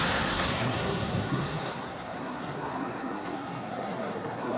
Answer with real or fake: fake